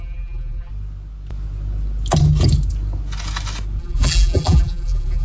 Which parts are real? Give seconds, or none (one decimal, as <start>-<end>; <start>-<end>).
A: 0.7-3.8